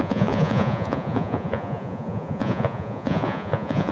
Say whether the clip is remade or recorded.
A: remade